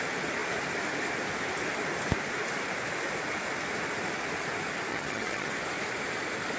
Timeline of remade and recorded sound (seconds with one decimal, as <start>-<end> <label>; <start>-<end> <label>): 0.0-4.9 recorded; 4.9-5.5 remade; 5.5-6.6 recorded